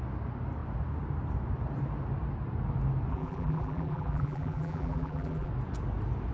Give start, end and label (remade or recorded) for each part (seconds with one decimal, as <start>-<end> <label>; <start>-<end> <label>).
0.0-3.1 recorded; 3.1-5.5 remade; 5.5-6.3 recorded